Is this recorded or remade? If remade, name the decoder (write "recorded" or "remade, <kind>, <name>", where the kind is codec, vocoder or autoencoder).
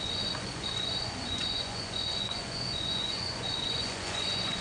remade, vocoder, Vocos